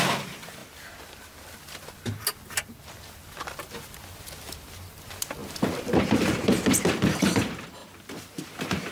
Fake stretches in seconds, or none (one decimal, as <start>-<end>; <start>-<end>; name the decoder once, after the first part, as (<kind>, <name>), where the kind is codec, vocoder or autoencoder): none